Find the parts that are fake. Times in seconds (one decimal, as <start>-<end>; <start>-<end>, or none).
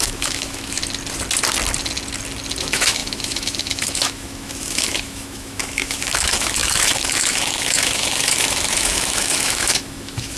0.0-0.8; 2.6-10.4